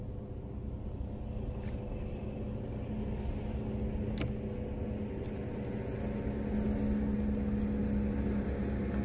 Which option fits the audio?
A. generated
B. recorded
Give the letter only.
B